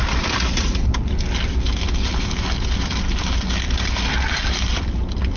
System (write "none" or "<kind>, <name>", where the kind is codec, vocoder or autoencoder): none